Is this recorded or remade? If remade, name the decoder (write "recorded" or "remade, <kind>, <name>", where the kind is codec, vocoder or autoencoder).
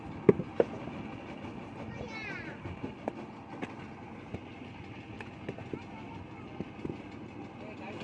recorded